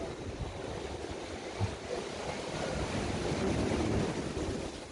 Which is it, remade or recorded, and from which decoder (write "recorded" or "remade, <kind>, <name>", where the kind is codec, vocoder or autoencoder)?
recorded